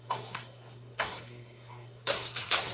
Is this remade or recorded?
remade